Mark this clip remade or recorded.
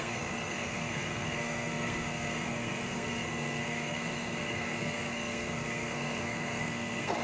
remade